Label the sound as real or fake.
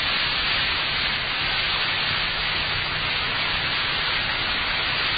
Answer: real